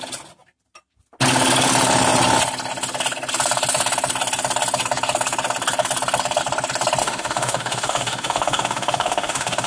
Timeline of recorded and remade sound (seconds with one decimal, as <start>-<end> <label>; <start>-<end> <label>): 0.0-7.0 recorded; 7.0-9.7 remade